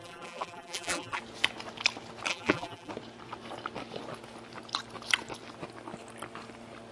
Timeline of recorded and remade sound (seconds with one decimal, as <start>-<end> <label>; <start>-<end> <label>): 0.0-1.2 remade; 1.2-2.3 recorded; 2.3-2.9 remade; 2.9-6.9 recorded